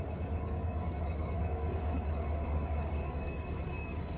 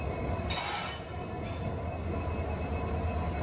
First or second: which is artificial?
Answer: first